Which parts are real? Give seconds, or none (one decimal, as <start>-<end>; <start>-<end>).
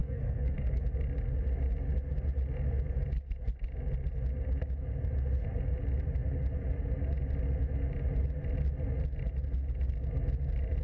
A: 0.8-10.8